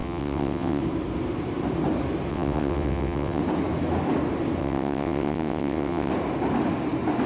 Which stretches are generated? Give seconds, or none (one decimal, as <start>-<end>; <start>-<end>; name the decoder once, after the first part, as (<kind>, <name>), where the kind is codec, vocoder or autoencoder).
0.0-0.8 (vocoder, WaveNeXt); 2.3-3.4; 4.6-6.1